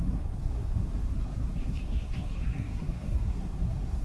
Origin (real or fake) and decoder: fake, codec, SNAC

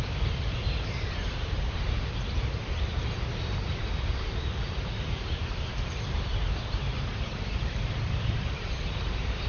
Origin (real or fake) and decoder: fake, vocoder, BigVGAN v2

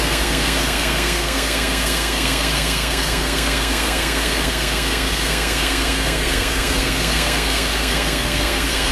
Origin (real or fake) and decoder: fake, codec, SNAC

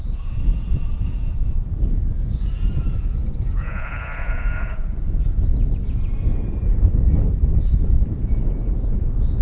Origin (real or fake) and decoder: fake, vocoder, Vocos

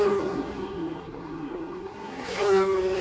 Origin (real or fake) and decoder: fake, codec, SNAC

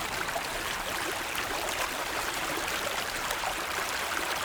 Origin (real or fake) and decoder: fake, vocoder, BigVGAN v2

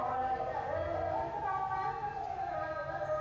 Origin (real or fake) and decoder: real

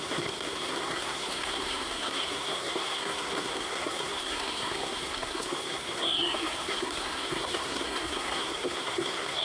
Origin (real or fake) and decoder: fake, codec, SNAC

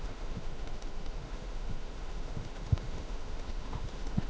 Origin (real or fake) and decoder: fake, autoencoder, DAC-VAE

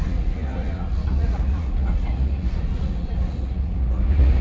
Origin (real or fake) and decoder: fake, vocoder, Vocos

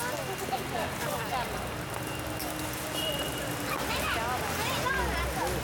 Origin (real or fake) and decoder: real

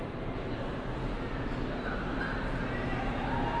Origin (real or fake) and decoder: real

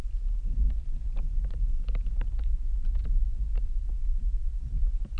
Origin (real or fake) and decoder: real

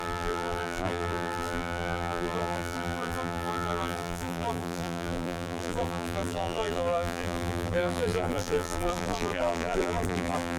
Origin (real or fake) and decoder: fake, vocoder, BigVGAN v2